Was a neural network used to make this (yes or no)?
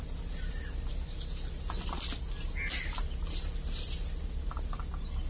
no